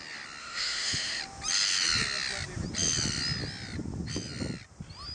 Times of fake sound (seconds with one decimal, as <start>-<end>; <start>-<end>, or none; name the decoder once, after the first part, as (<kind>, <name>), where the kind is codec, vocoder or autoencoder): 0.4-1.2 (autoencoder, DAC-VAE)